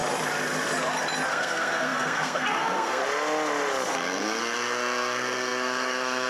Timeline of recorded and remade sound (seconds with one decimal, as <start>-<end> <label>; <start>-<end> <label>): 0.0-1.3 recorded; 1.3-3.0 remade; 3.0-3.9 recorded; 3.9-6.3 remade